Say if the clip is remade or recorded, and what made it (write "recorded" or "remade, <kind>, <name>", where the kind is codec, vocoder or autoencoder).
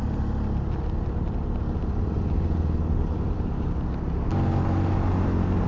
recorded